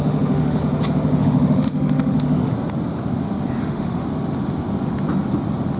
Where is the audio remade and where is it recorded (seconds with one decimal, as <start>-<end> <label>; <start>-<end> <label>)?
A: 0.0-0.6 remade; 0.6-1.2 recorded; 1.2-2.5 remade; 2.5-3.6 recorded; 3.6-4.0 remade; 4.0-5.8 recorded